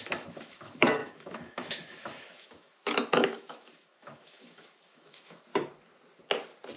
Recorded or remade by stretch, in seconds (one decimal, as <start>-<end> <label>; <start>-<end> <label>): 0.0-5.5 remade; 5.5-6.8 recorded